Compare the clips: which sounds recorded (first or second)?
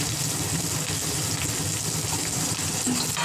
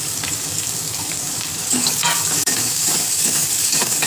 first